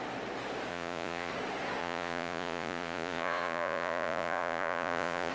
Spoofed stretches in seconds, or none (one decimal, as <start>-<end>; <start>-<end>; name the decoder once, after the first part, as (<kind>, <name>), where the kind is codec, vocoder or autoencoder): 0.7-1.3 (vocoder, Vocos); 1.8-5.3